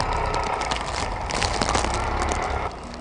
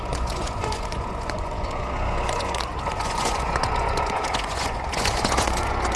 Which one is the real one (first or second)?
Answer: first